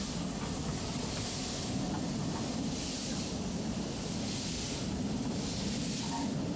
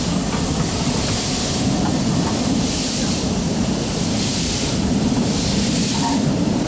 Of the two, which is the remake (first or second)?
second